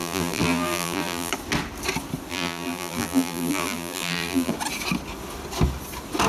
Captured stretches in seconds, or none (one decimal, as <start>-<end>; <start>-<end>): 1.3-2.3; 4.5-6.3